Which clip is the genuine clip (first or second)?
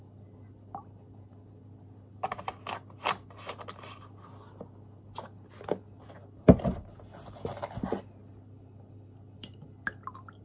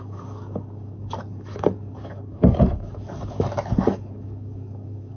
first